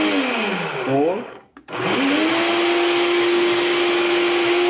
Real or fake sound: real